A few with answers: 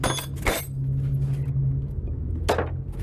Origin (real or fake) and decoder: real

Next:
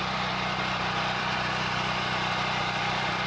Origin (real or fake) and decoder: fake, vocoder, BigVGAN v2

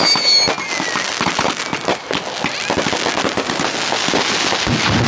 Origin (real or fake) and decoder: real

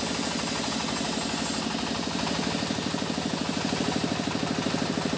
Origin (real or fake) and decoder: real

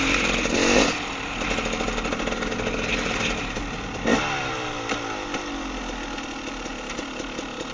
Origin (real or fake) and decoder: real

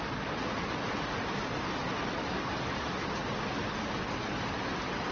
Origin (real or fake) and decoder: real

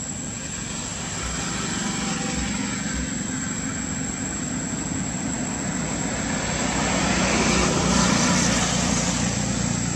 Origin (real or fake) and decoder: real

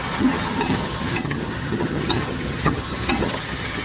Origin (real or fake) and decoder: fake, vocoder, HiFi-GAN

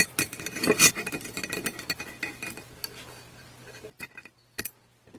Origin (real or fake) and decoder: real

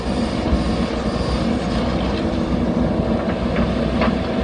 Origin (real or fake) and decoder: real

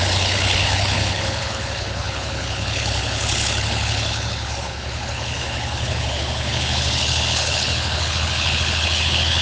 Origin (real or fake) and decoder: fake, codec, HILCodec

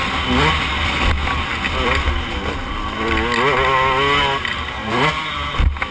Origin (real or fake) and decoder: real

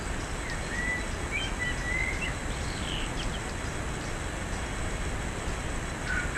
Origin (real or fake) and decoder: real